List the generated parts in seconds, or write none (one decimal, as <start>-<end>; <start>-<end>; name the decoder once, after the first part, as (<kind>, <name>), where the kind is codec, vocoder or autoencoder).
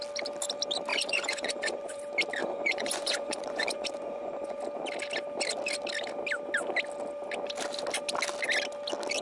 0.9-2.0 (vocoder, Vocos); 2.4-4.6